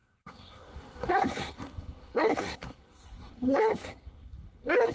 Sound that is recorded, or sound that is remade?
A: remade